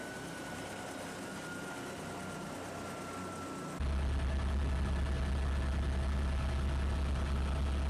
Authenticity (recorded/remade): recorded